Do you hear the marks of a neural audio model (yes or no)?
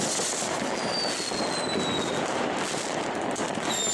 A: no